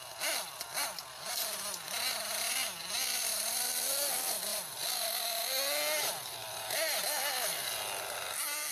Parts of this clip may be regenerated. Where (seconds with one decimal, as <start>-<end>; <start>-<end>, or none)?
none

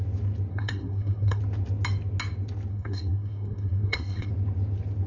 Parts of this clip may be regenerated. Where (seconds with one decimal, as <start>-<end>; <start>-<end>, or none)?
0.5-1.4; 2.7-4.3

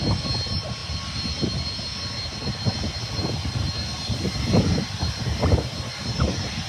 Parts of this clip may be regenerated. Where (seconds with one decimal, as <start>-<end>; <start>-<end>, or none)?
none

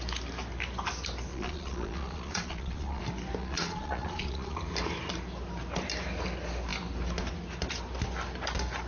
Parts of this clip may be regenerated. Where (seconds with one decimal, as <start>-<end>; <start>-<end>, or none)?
1.3-3.0; 3.4-4.6